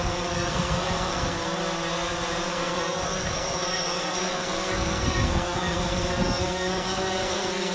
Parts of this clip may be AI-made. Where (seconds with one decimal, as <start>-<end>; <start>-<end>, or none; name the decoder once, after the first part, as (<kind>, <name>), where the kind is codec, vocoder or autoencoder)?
0.0-1.6 (codec, SNAC); 2.5-7.7